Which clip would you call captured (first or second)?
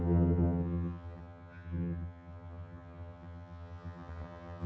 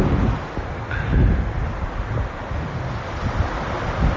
second